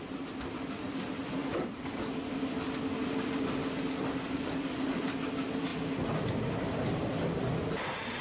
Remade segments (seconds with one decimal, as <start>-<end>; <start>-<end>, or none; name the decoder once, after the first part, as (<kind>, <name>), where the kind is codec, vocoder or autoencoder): none